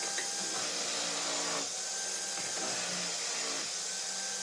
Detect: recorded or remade recorded